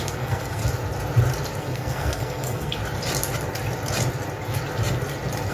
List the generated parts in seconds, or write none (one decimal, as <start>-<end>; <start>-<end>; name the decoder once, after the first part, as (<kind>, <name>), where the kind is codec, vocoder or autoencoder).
0.0-0.6 (codec, SNAC); 1.6-2.8